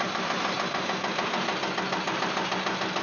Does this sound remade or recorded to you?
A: recorded